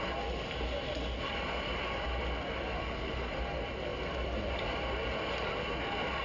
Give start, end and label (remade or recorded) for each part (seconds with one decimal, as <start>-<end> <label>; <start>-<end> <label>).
0.0-2.8 recorded; 2.8-3.3 remade; 3.3-6.2 recorded

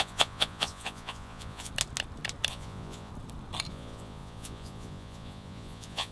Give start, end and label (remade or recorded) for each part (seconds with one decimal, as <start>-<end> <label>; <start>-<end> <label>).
0.0-1.7 remade; 1.7-2.5 recorded; 2.5-3.1 remade; 3.1-3.7 recorded; 3.7-6.1 remade

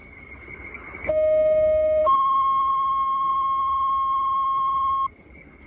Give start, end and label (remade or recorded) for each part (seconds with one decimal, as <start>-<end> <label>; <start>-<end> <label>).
0.0-2.7 recorded; 2.7-3.3 remade; 3.3-5.7 recorded